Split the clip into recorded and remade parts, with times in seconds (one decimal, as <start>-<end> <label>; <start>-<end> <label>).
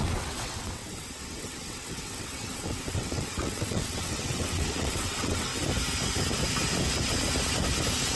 0.0-5.5 remade; 5.5-8.2 recorded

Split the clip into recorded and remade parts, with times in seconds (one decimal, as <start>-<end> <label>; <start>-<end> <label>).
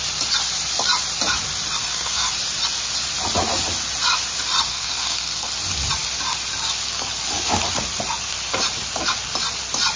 0.0-1.8 recorded; 1.8-2.3 remade; 2.3-4.7 recorded; 4.7-5.5 remade; 5.5-10.0 recorded